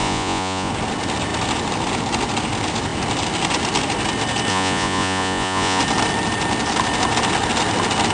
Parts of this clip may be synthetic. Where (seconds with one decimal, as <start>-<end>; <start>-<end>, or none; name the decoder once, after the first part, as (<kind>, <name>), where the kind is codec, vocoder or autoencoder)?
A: 0.0-0.7 (vocoder, Vocos); 4.5-5.8